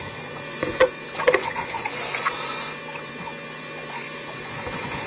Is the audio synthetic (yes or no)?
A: yes